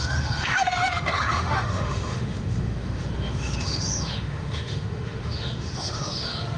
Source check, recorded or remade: remade